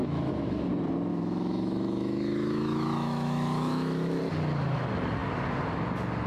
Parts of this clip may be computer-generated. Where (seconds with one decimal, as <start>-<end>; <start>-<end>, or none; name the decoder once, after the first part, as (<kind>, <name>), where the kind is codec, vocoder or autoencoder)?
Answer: 0.0-0.7 (autoencoder, DAC-VAE); 1.1-4.2